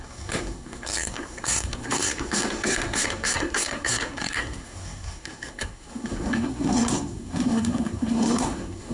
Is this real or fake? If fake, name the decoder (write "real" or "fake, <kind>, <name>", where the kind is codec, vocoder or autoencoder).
fake, codec, SNAC